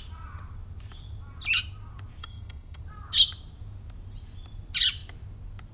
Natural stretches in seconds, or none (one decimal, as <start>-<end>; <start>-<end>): 0.0-2.2; 2.8-5.7